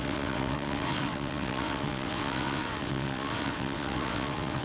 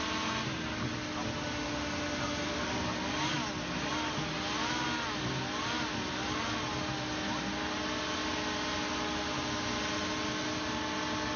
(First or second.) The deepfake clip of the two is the first